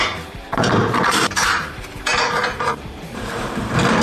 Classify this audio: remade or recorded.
remade